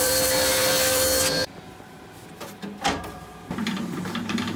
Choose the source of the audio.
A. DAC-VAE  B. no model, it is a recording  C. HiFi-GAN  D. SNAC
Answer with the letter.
B